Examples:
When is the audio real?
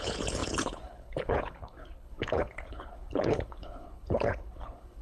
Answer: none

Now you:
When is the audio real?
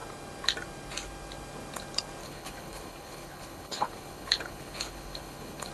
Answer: 0.0-2.2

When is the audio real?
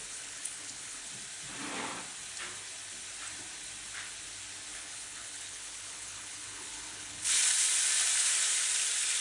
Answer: 1.1-4.7; 7.4-9.2